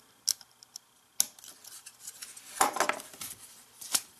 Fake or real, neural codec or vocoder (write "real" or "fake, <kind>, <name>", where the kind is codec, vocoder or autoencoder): real